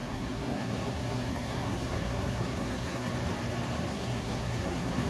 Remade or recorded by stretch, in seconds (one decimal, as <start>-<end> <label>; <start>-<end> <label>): 0.0-3.1 remade; 3.1-3.9 recorded; 3.9-5.1 remade